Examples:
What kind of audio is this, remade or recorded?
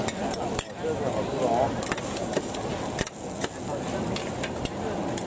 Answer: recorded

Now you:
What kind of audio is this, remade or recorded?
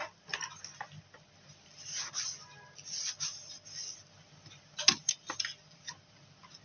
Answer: recorded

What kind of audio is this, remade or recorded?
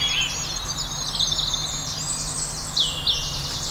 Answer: recorded